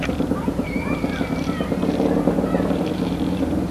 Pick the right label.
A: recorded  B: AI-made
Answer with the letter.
B